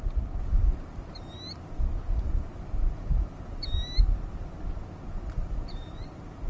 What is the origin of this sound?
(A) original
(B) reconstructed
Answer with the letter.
A